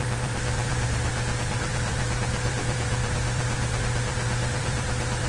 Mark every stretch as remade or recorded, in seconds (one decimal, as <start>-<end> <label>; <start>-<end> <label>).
0.0-5.3 remade